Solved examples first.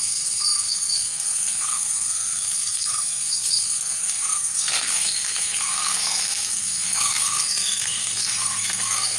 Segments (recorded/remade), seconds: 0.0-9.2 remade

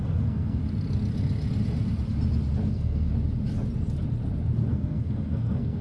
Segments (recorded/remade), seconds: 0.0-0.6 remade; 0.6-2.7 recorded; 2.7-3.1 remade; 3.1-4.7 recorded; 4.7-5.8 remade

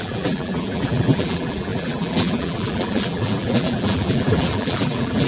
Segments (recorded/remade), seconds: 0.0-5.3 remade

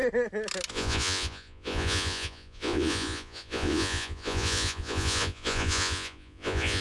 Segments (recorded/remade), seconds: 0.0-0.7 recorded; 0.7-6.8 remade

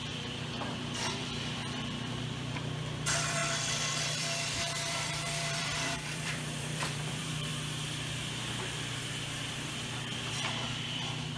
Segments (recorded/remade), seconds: 0.0-7.5 remade; 7.5-10.3 recorded; 10.3-11.4 remade